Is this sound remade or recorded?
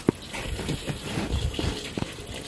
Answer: recorded